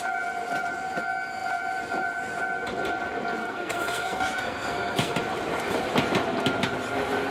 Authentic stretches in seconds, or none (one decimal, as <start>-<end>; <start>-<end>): 0.0-3.4; 5.2-7.3